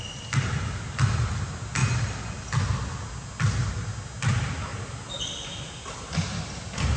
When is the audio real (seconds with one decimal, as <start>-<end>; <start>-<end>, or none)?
0.0-7.0